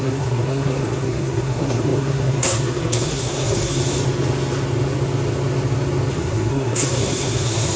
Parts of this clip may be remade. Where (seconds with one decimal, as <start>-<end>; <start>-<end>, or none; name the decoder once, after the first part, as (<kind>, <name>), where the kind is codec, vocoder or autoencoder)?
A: 0.0-3.8 (codec, SNAC); 6.1-7.8